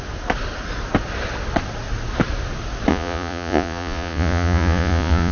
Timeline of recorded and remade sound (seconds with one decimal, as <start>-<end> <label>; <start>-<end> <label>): 0.0-2.9 recorded; 2.9-5.3 remade